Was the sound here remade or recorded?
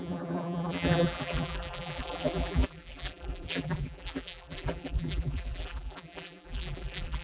remade